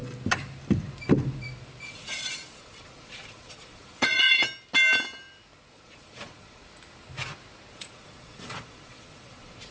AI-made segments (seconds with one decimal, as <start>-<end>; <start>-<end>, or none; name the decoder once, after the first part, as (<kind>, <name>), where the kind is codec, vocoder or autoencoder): 1.8-4.4 (vocoder, Vocos); 5.7-6.6; 7.7-9.7